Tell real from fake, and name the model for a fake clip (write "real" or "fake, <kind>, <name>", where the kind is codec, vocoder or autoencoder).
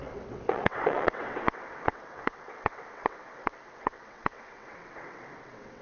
fake, vocoder, WaveNeXt